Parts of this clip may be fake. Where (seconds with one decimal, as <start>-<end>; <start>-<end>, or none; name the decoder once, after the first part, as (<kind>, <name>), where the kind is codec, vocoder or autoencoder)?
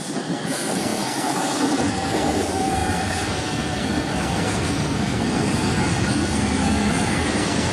0.0-7.7 (codec, SNAC)